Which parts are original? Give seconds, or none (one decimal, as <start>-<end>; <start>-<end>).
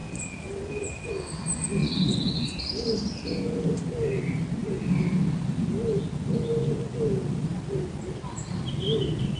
0.0-1.8; 2.6-9.4